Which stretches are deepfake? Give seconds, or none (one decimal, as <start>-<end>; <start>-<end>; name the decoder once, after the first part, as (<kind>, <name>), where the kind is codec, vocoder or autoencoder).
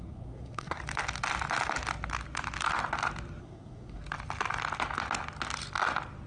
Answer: 0.0-0.8 (codec, SNAC); 3.4-4.0